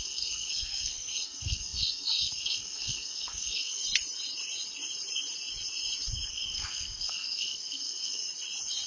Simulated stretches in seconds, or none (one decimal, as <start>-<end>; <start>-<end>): 0.0-3.8; 6.3-8.2